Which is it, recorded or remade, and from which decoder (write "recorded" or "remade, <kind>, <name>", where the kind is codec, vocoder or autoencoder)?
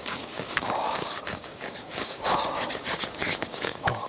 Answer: remade, codec, DAC